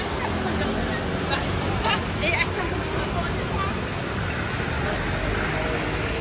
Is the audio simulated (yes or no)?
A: no